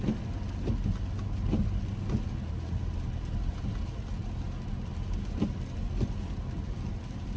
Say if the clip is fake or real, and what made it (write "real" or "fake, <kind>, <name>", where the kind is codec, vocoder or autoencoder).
real